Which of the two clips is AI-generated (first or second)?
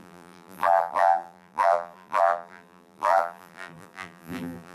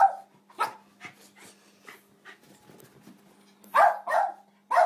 first